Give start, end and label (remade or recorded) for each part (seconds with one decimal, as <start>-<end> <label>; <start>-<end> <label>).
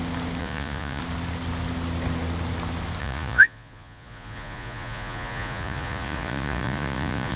0.0-0.4 recorded; 0.4-1.0 remade; 1.0-3.0 recorded; 3.0-7.4 remade